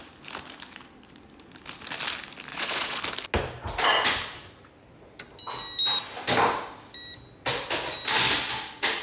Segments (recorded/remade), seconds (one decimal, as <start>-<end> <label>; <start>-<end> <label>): 0.0-2.5 recorded; 2.5-3.0 remade; 3.0-9.0 recorded